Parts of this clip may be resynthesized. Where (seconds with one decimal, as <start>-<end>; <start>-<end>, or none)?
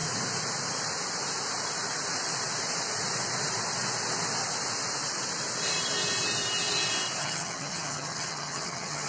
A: 7.2-9.1